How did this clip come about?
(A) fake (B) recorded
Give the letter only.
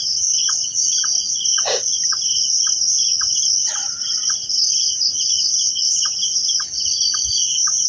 B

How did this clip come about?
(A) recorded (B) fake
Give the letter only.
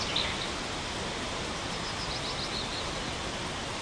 A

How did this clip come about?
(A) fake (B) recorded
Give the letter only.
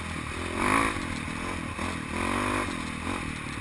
B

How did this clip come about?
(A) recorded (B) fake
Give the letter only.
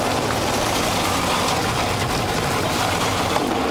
A